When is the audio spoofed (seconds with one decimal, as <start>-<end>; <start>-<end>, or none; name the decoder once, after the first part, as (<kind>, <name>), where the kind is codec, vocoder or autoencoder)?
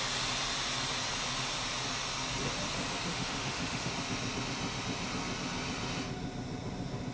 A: 3.1-3.9 (autoencoder, DAC-VAE)